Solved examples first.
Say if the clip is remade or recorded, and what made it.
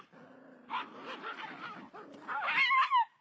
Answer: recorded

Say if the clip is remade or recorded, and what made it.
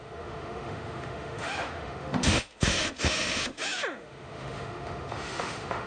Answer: remade, autoencoder, DAC-VAE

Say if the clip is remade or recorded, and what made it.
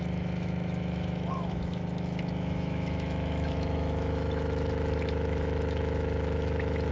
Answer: remade, autoencoder, DAC-VAE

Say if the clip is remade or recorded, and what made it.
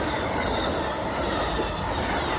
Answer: recorded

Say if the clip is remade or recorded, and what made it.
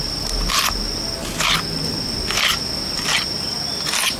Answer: recorded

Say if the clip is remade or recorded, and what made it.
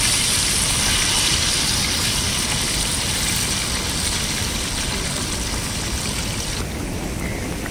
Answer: recorded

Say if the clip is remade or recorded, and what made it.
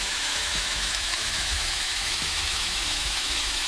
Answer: remade, autoencoder, DAC-VAE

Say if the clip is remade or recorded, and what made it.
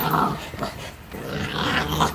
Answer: recorded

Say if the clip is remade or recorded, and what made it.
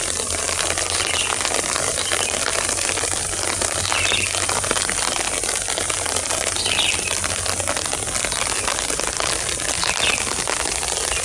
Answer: recorded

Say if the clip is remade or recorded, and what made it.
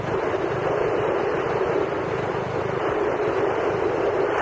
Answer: recorded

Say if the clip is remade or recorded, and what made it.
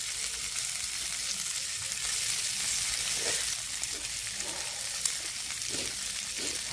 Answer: recorded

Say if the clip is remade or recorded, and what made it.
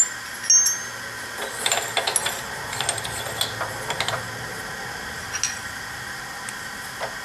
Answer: recorded